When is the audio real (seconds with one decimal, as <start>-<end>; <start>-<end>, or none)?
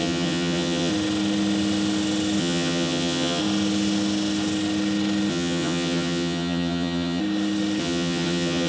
0.9-2.4; 3.4-5.3; 7.2-7.8